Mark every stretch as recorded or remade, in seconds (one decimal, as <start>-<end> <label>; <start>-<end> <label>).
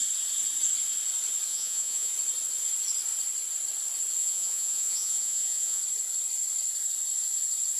0.0-1.5 recorded; 1.5-2.1 remade; 2.1-4.2 recorded; 4.2-5.8 remade; 5.8-7.8 recorded